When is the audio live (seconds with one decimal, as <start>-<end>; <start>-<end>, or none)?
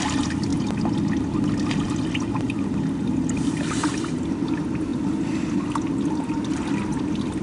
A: 0.0-7.4